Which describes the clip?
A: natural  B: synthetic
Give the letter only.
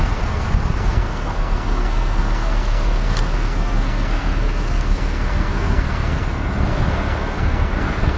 B